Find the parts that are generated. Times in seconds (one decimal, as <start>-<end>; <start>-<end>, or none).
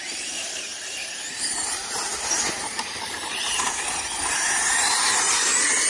0.0-5.9